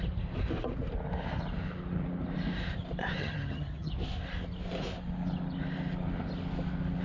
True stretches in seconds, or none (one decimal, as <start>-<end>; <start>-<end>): 0.0-3.2; 3.9-7.0